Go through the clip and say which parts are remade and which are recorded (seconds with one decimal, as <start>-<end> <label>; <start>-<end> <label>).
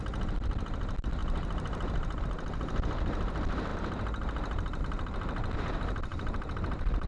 0.0-1.2 recorded; 1.2-2.2 remade; 2.2-6.1 recorded; 6.1-7.1 remade